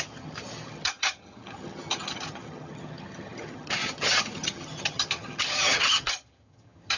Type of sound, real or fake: fake